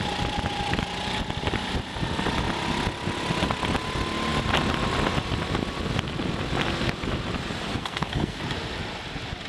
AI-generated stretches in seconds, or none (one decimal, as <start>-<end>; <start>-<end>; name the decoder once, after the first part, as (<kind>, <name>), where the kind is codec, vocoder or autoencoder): 7.7-8.4 (codec, SNAC)